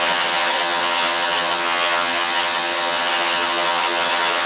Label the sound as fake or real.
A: fake